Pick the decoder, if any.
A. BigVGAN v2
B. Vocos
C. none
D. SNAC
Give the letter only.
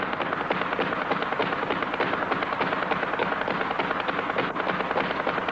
C